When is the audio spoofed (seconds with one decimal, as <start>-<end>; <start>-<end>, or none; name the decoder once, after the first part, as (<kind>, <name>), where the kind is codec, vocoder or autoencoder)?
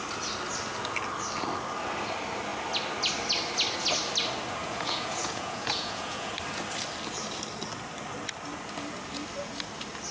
4.6-6.3 (vocoder, Vocos)